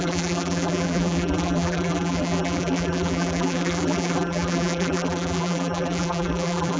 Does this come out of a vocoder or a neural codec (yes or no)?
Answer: yes